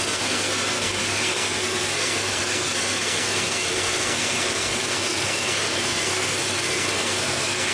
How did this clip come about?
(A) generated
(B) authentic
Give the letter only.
A